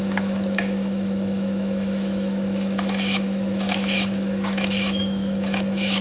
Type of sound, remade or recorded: remade